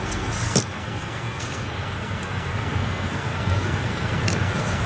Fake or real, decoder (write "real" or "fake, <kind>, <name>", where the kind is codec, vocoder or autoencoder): fake, codec, SNAC